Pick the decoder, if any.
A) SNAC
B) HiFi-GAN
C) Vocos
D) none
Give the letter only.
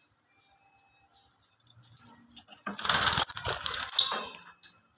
D